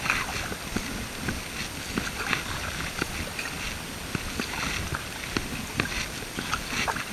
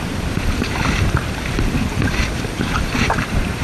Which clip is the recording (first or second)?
first